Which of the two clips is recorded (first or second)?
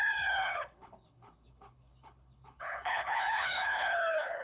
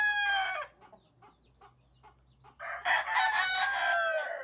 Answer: second